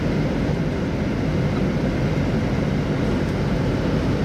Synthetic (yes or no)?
no